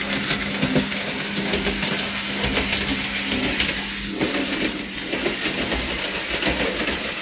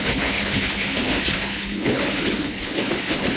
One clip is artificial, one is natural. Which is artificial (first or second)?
second